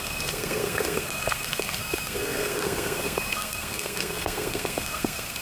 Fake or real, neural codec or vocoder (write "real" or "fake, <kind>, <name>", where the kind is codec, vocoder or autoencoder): fake, codec, SNAC